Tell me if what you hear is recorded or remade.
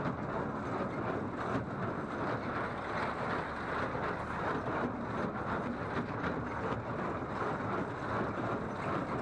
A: recorded